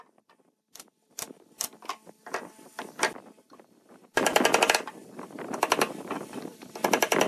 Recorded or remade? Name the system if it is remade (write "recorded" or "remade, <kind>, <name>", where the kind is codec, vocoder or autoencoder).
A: recorded